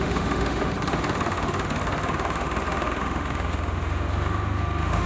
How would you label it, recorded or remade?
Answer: remade